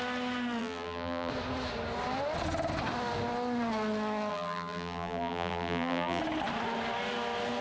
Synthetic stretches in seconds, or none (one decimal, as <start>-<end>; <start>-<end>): 0.6-1.3; 4.3-6.2